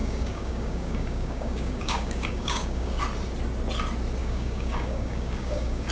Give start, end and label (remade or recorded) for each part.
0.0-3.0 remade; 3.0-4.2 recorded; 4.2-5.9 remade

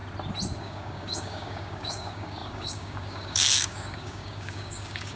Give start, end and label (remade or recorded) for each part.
0.0-0.6 recorded; 0.6-5.2 remade

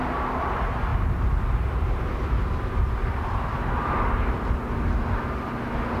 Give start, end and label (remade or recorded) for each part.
0.0-6.0 recorded

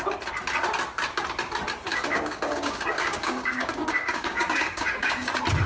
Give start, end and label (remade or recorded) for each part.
0.0-1.9 recorded; 1.9-5.3 remade; 5.3-5.7 recorded

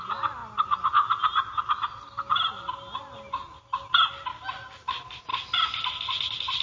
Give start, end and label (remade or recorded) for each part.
0.0-6.6 recorded

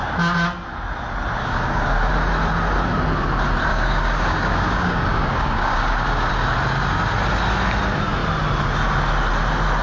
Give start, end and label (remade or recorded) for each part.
0.0-1.4 recorded; 1.4-2.1 remade; 2.1-3.7 recorded; 3.7-6.3 remade; 6.3-9.8 recorded

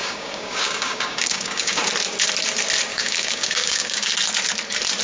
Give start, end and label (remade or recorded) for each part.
0.0-1.8 remade; 1.8-2.9 recorded; 2.9-4.1 remade; 4.1-5.0 recorded